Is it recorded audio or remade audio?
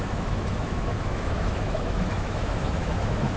remade